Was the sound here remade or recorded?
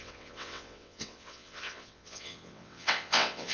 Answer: remade